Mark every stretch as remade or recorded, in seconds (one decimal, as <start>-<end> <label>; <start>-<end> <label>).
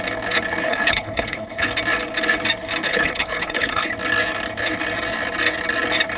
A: 0.0-0.6 recorded; 0.6-1.7 remade; 1.7-2.8 recorded; 2.8-3.9 remade; 3.9-6.2 recorded